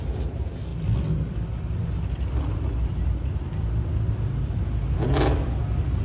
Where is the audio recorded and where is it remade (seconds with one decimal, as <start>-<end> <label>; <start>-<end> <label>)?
0.0-6.0 recorded